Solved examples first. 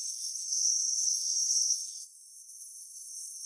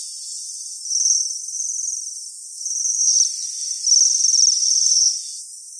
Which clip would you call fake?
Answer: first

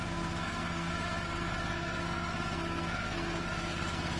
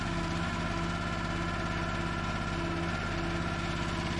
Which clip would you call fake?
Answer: first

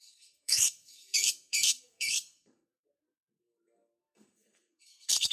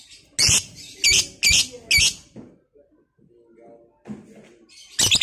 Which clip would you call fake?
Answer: first